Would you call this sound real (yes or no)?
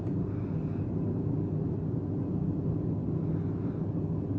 yes